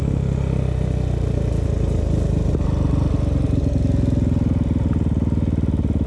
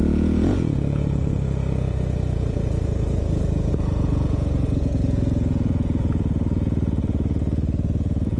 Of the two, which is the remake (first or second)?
second